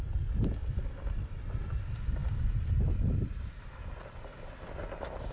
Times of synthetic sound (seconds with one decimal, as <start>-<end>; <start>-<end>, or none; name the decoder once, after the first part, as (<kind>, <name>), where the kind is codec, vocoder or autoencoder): none